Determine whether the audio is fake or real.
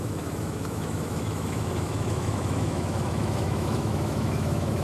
fake